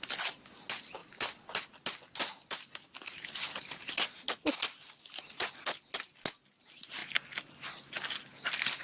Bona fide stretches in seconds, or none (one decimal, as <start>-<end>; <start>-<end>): 0.0-8.8